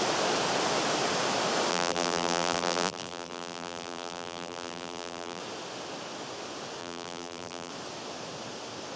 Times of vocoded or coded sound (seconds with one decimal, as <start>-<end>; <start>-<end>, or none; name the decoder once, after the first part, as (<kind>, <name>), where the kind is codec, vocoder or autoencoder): 1.7-5.4 (vocoder, BigVGAN v2); 6.8-7.7